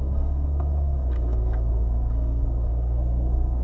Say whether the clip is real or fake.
fake